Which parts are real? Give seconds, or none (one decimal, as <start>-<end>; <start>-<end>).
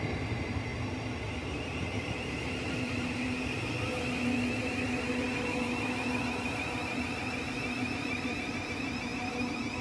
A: 0.7-1.3